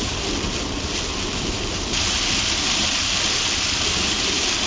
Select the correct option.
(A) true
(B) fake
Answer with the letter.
A